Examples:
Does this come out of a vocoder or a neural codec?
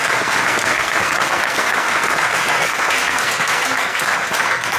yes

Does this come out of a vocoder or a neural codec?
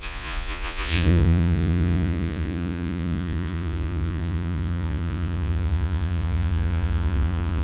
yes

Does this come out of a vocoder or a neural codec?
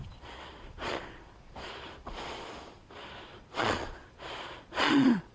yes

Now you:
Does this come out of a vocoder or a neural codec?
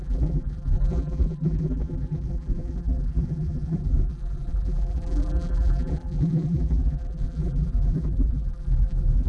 yes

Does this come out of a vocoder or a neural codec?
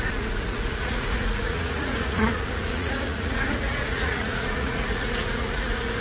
yes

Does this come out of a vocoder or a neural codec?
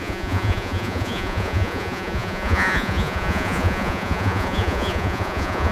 yes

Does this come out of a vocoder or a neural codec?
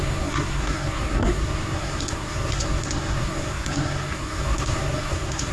yes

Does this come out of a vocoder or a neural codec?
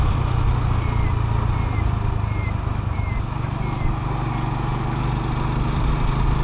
no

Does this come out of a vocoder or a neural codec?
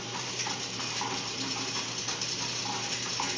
yes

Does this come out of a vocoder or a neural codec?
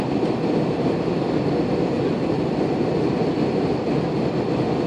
no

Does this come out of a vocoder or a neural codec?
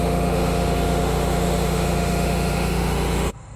yes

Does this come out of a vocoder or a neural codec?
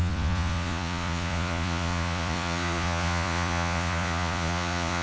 yes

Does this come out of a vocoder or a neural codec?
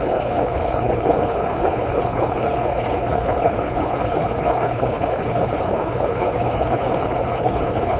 yes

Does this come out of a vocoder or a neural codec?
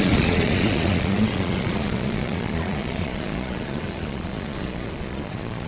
yes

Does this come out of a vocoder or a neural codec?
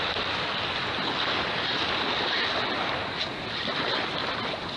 no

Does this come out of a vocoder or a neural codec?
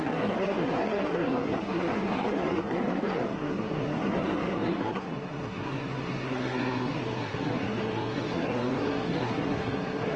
yes